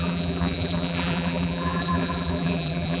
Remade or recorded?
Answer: remade